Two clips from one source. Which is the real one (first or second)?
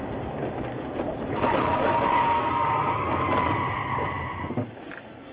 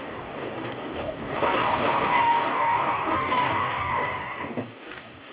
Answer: first